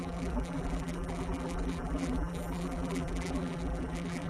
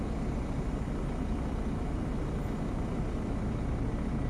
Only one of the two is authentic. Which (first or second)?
second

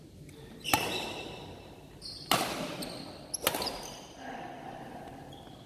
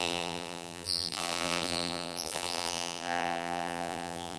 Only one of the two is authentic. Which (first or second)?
first